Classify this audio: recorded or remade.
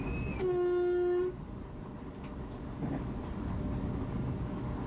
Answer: recorded